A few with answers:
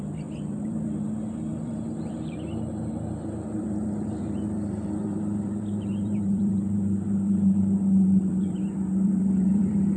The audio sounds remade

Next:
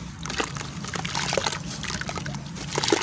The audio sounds recorded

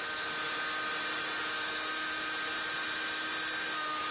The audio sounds recorded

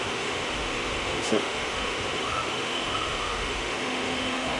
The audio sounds remade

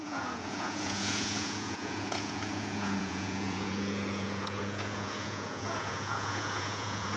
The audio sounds remade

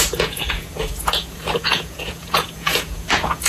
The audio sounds remade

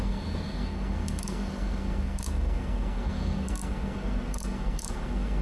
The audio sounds remade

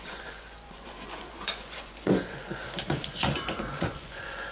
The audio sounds remade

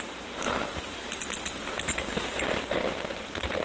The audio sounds remade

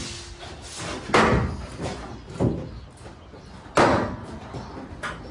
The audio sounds recorded